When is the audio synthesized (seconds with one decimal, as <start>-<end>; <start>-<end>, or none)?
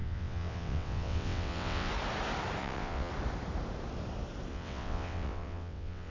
0.0-1.9; 2.6-3.1; 4.5-6.1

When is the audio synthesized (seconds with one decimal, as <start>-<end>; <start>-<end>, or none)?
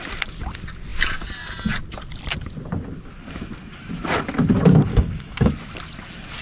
4.9-5.5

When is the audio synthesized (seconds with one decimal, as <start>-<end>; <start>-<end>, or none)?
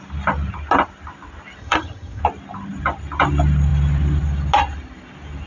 1.6-2.2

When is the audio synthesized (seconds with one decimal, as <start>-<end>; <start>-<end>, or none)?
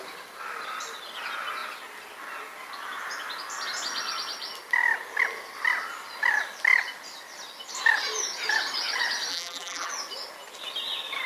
9.3-9.9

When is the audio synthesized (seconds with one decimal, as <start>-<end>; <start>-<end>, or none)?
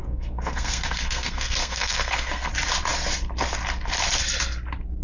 0.0-2.5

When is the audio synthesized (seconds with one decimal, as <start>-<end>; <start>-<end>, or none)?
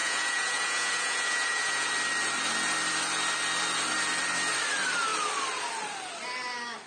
0.0-1.9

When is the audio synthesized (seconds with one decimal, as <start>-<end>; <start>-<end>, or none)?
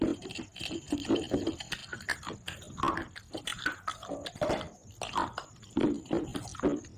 3.9-4.5